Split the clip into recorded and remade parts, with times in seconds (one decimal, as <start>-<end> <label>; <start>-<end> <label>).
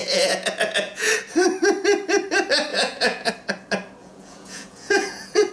0.0-1.1 remade; 1.1-2.7 recorded; 2.7-3.3 remade; 3.3-4.0 recorded; 4.0-5.5 remade